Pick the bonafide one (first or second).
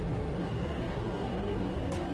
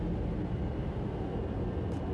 second